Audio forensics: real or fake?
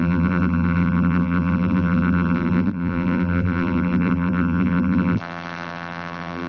fake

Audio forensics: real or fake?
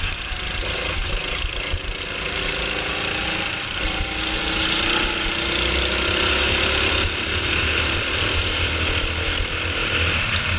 real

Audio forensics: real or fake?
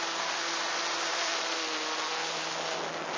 real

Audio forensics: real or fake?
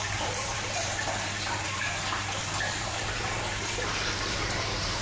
fake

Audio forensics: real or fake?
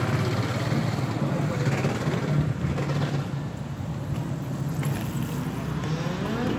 real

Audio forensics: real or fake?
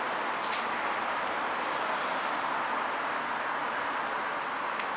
real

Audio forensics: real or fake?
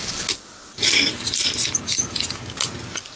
real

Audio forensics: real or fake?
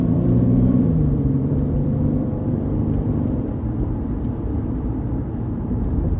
fake